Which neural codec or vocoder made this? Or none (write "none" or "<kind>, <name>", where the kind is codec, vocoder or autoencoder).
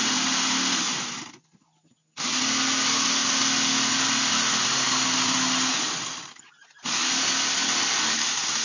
none